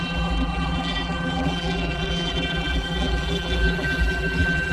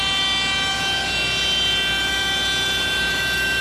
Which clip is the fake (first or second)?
first